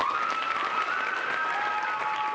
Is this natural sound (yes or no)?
yes